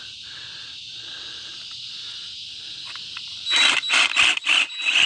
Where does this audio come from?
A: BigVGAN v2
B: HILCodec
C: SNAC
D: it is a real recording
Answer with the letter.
D